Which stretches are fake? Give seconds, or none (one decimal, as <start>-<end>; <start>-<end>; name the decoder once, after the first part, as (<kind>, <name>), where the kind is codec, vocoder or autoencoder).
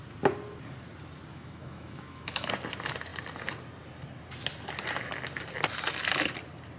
1.3-2.5 (autoencoder, DAC-VAE)